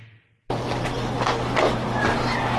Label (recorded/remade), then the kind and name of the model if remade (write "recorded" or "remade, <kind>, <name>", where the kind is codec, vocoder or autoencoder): recorded